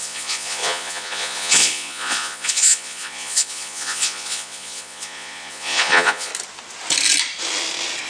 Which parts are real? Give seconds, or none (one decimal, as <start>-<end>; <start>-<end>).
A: 6.3-8.1